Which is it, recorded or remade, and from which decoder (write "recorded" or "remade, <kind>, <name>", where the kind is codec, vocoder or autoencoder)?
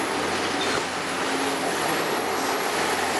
recorded